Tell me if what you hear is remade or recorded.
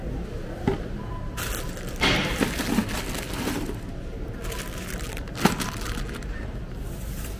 recorded